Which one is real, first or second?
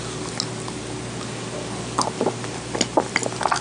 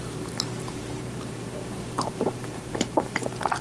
first